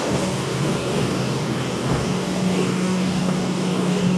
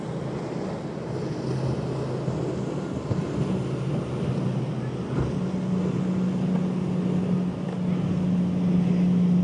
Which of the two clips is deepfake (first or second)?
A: first